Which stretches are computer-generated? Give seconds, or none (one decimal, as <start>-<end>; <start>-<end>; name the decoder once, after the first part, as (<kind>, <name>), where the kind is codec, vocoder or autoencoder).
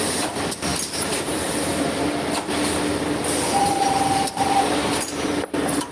0.0-1.7 (vocoder, BigVGAN v2); 3.6-5.9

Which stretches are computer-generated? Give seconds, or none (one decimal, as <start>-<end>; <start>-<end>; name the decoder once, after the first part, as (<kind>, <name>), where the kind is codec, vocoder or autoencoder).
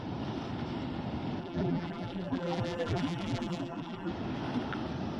1.4-4.1 (vocoder, BigVGAN v2)